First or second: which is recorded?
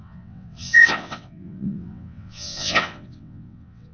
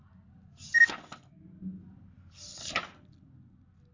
second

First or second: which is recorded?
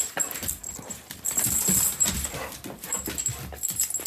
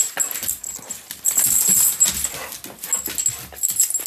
second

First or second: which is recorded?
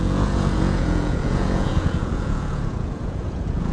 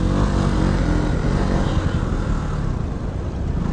second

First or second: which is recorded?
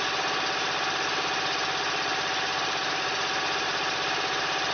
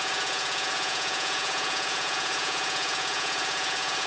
first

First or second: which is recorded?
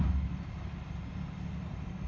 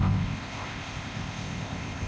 first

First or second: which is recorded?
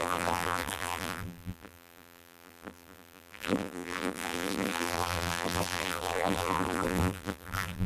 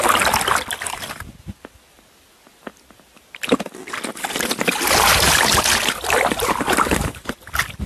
second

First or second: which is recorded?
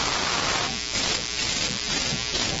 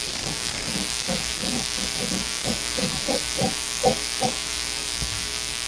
first